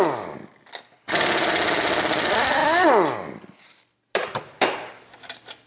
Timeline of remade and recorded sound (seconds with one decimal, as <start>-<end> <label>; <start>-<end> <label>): 0.0-5.7 recorded

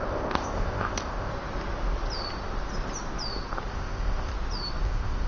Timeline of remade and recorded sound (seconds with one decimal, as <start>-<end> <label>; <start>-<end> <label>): 0.0-1.3 remade; 1.3-3.7 recorded; 3.7-4.3 remade; 4.3-4.8 recorded; 4.8-5.3 remade

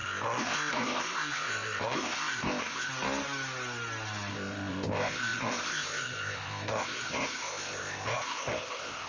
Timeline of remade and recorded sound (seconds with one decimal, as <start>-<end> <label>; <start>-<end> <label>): 0.0-2.9 remade; 2.9-4.3 recorded; 4.3-9.1 remade

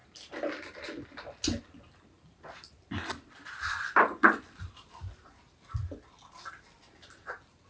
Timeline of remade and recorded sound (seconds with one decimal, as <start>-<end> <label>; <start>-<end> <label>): 0.0-7.7 recorded

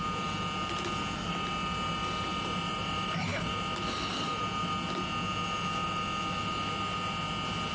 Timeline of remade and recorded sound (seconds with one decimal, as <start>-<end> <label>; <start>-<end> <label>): 0.0-7.7 recorded

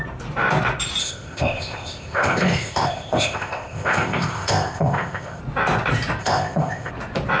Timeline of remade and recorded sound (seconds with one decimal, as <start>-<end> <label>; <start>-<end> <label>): 0.0-1.0 recorded; 1.0-5.4 remade; 5.4-6.2 recorded; 6.2-6.9 remade; 6.9-7.4 recorded

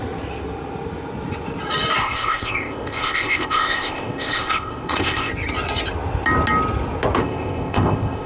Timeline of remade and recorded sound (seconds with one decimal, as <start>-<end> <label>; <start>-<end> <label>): 0.0-2.0 recorded; 2.0-5.3 remade; 5.3-7.2 recorded; 7.2-8.3 remade